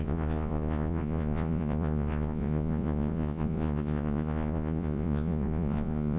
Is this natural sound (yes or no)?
no